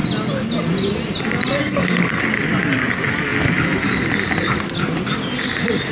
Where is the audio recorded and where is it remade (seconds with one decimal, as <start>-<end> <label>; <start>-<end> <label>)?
0.0-1.6 recorded; 1.6-2.2 remade; 2.2-5.9 recorded